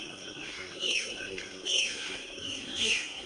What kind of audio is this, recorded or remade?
remade